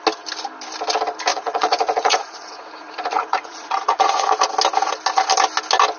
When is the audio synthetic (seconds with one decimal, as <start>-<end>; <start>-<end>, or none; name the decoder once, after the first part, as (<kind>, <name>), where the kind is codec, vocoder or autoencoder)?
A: 1.3-4.3 (vocoder, Vocos)